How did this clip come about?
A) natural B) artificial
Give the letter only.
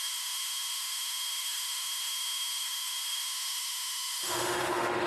B